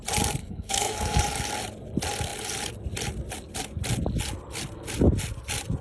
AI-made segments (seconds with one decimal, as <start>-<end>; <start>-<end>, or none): 0.4-1.2